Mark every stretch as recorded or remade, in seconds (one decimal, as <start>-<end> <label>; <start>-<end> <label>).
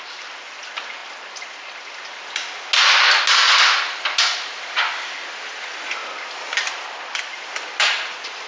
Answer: 0.0-8.5 recorded